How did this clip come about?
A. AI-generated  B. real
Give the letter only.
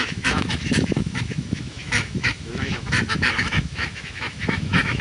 A